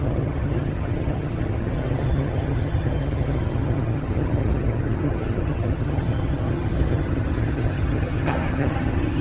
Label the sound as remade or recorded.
remade